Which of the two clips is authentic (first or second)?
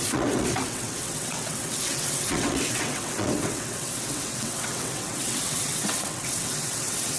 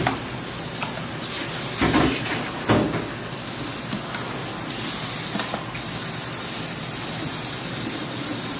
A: second